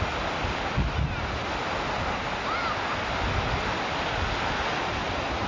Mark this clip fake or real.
real